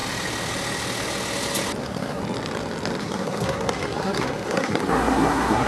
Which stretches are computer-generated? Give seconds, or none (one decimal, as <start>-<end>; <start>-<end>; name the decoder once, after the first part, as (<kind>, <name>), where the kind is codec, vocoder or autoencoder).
1.8-2.2 (codec, SNAC); 3.0-5.7